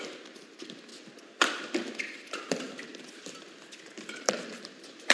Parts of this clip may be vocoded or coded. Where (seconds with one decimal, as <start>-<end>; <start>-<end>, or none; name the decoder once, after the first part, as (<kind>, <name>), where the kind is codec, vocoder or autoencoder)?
0.0-0.9 (vocoder, BigVGAN v2); 1.5-2.9; 4.0-5.1